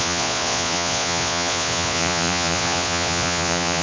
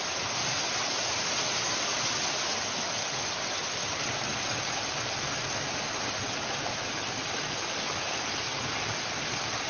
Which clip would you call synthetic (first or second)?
first